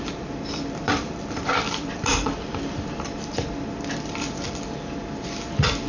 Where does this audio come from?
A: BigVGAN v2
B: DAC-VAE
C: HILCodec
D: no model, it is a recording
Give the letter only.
A